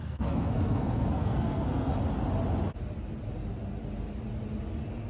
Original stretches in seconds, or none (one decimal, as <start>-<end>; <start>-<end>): 1.9-5.1